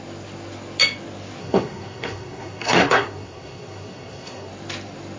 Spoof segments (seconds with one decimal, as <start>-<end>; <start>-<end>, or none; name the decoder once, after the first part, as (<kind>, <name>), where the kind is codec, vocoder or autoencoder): 1.4-4.5 (codec, SNAC)